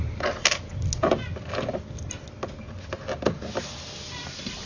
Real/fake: real